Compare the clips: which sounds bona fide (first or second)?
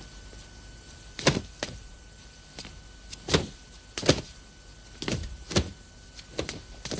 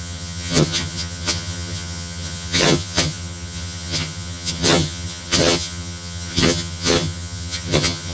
first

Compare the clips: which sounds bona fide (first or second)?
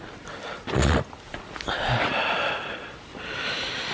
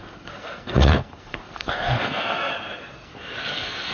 first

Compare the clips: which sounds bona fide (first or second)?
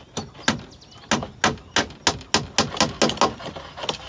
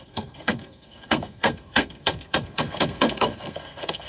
first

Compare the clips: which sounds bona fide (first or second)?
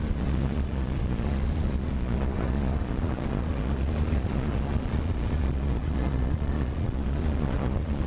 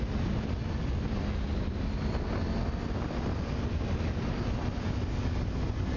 second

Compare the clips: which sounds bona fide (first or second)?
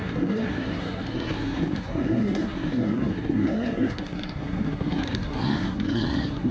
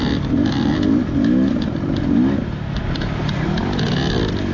second